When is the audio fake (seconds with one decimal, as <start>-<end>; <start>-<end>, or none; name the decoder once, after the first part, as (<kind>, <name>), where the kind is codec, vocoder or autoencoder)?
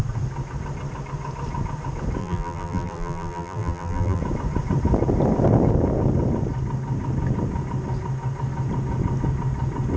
2.2-4.2 (vocoder, BigVGAN v2)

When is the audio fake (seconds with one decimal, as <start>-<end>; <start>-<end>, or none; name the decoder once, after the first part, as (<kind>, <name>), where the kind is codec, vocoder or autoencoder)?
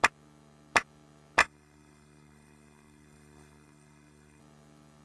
1.4-4.4 (codec, SNAC)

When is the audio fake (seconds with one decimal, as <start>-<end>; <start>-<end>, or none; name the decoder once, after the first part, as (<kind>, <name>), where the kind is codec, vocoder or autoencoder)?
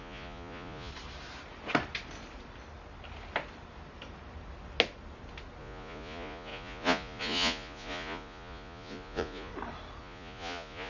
0.0-0.9 (vocoder, Vocos); 5.6-9.5; 10.0-10.9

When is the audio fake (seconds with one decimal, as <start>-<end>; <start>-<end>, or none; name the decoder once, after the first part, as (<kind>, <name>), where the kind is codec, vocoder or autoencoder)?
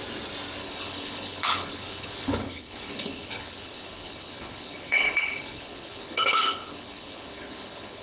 0.6-8.0 (codec, HILCodec)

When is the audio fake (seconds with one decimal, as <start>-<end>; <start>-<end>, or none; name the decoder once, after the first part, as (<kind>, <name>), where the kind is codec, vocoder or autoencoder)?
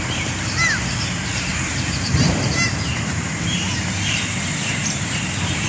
0.0-5.7 (vocoder, BigVGAN v2)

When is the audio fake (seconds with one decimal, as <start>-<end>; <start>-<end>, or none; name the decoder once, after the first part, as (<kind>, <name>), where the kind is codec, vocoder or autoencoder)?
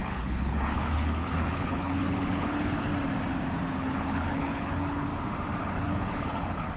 0.0-2.9 (codec, HILCodec); 3.7-5.1; 5.6-6.8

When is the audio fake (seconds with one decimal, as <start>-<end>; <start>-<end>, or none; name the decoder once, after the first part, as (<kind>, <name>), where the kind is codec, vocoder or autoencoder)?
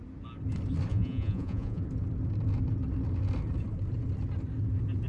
0.9-1.8 (vocoder, Vocos)